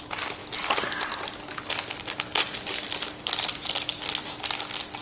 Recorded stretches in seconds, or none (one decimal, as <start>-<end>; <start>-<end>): 0.0-5.0